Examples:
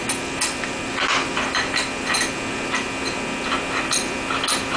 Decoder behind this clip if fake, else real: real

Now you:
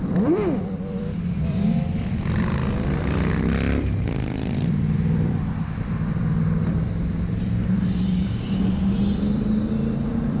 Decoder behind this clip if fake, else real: fake, vocoder, BigVGAN v2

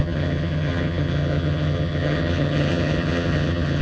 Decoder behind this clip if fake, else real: fake, vocoder, HiFi-GAN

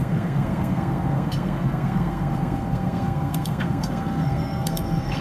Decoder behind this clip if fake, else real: fake, codec, SNAC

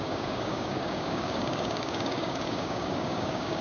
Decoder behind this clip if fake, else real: fake, codec, DAC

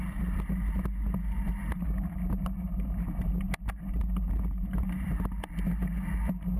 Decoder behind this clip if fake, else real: real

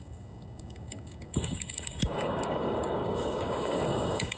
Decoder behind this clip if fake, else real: fake, codec, DAC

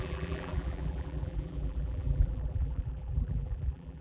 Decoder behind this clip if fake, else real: fake, vocoder, BigVGAN v2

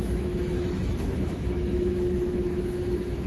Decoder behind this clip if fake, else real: fake, autoencoder, DAC-VAE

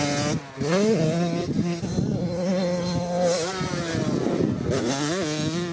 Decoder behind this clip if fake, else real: real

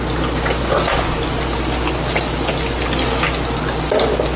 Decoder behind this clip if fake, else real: real